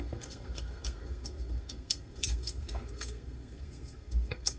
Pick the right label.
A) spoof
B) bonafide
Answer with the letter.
A